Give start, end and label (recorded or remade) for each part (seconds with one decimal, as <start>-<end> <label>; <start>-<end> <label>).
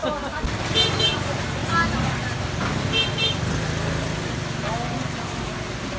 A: 0.0-6.0 recorded